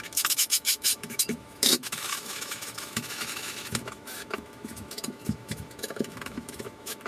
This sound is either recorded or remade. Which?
remade